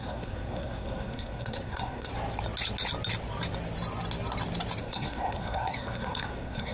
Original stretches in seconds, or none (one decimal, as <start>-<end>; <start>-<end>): 2.1-4.8